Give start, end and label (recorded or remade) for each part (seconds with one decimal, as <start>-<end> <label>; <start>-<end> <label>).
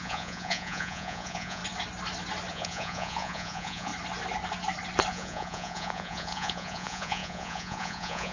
0.0-1.6 remade; 1.6-2.5 recorded; 2.5-3.9 remade; 3.9-5.1 recorded; 5.1-8.3 remade